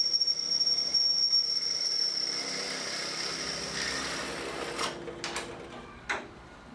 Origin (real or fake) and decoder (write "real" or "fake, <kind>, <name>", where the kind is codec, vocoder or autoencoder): real